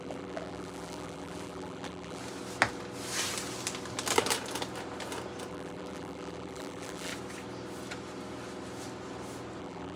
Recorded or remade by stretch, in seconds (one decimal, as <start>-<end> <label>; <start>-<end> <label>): 0.0-2.2 remade; 2.2-5.5 recorded; 5.5-7.1 remade; 7.1-9.6 recorded; 9.6-10.0 remade